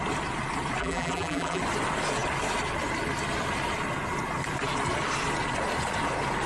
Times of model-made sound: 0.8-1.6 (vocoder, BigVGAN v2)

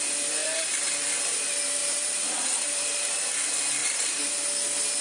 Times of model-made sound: 0.4-0.9 (vocoder, BigVGAN v2); 1.8-3.1; 3.8-4.3

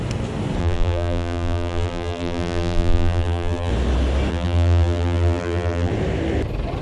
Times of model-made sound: 0.6-3.7 (vocoder, BigVGAN v2); 4.3-5.9

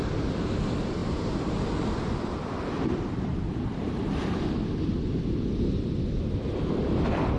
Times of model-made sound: 3.3-4.1 (vocoder, BigVGAN v2)

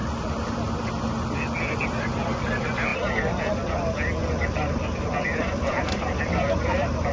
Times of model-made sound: 2.4-7.1 (vocoder, BigVGAN v2)

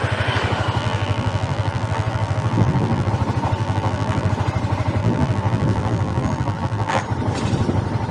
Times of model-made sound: 0.8-3.1 (vocoder, BigVGAN v2); 3.6-4.3; 5.0-7.0